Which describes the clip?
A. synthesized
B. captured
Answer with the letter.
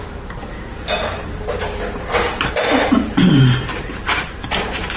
A